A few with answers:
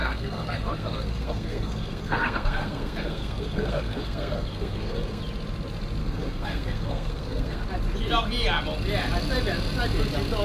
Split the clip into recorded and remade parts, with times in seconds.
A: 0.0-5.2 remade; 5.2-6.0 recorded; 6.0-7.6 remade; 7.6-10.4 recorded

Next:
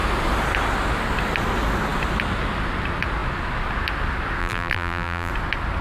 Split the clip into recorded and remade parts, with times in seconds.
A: 0.0-4.4 recorded; 4.4-5.3 remade; 5.3-5.8 recorded

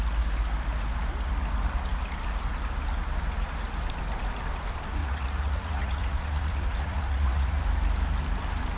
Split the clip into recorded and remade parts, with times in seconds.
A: 0.0-5.0 recorded; 5.0-7.6 remade; 7.6-8.8 recorded

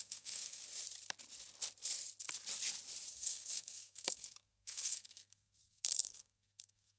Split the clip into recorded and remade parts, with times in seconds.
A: 0.0-0.6 remade; 0.6-3.1 recorded; 3.1-7.0 remade